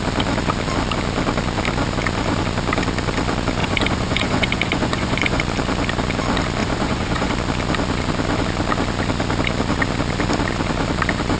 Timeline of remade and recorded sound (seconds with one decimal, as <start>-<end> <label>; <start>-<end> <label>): 0.0-3.6 recorded; 3.6-5.4 remade; 5.4-6.6 recorded; 6.6-7.3 remade; 7.3-11.4 recorded